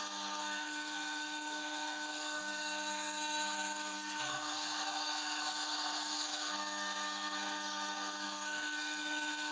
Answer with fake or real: fake